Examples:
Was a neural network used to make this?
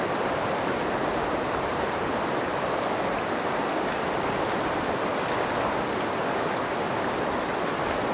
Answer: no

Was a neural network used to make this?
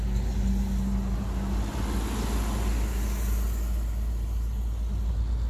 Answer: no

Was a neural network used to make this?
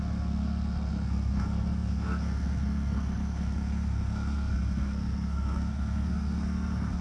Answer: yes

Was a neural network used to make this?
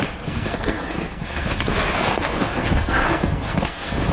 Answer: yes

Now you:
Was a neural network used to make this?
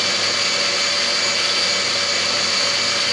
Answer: no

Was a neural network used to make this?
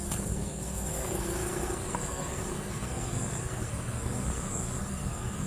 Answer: yes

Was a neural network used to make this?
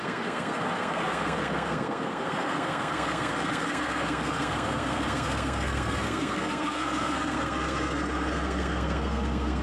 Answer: yes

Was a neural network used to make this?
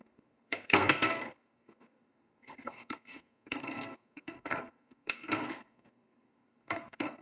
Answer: yes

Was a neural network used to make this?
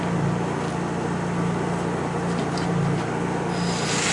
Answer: no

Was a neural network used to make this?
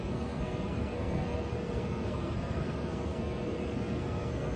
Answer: yes